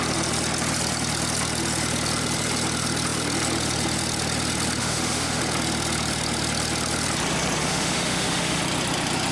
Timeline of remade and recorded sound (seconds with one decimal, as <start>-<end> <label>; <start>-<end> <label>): 0.0-4.8 recorded; 4.8-5.4 remade; 5.4-7.6 recorded; 7.6-8.6 remade; 8.6-9.3 recorded